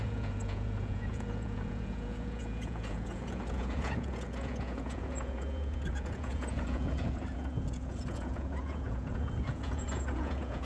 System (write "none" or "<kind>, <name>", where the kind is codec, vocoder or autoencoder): vocoder, Vocos